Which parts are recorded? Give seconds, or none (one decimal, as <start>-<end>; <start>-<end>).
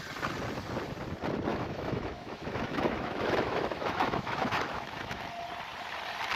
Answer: 0.0-1.5; 5.3-6.4